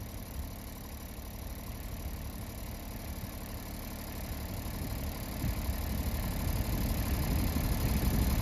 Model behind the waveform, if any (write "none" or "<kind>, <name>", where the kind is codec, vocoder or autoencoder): none